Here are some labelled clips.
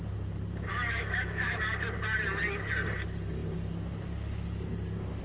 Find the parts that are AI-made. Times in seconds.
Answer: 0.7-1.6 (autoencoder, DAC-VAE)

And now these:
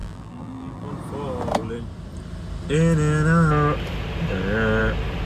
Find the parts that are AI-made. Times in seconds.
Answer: 0.0-0.9 (vocoder, BigVGAN v2)

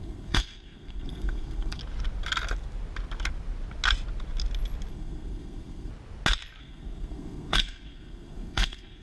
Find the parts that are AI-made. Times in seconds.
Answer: 0.0-1.8 (codec, SNAC); 4.9-5.9; 6.6-9.0

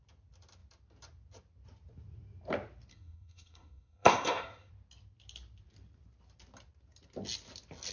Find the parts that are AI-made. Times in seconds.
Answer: 2.9-4.7 (codec, SNAC)

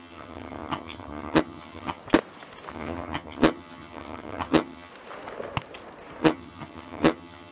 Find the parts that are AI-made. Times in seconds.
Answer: 0.0-2.0 (vocoder, HiFi-GAN); 2.7-4.9; 6.2-7.5

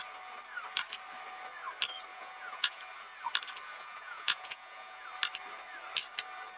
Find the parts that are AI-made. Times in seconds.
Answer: 2.1-2.8 (vocoder, Vocos); 3.7-5.0